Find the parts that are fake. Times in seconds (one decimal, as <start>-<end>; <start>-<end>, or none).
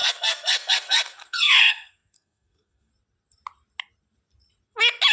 0.0-2.9